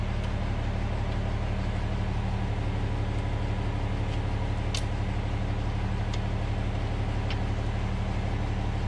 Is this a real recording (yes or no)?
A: yes